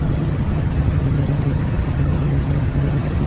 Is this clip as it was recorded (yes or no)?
no